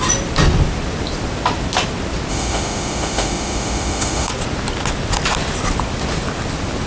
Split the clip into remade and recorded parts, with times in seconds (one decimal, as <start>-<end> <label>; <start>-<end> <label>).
0.0-2.3 recorded; 2.3-4.3 remade; 4.3-6.9 recorded